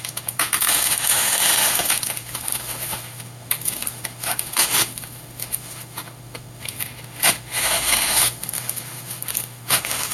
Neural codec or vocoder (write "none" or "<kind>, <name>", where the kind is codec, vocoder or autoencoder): autoencoder, DAC-VAE